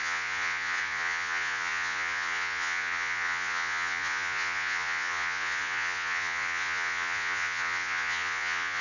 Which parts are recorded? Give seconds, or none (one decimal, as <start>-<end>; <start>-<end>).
none